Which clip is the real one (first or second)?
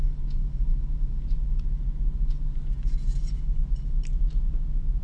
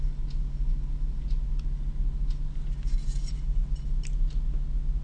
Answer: second